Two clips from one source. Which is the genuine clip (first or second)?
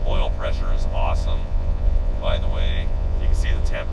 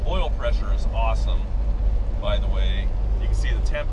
second